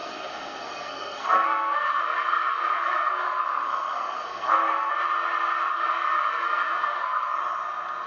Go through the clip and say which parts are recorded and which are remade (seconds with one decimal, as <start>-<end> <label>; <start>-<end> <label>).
0.0-4.9 remade; 4.9-5.7 recorded; 5.7-7.4 remade; 7.4-8.1 recorded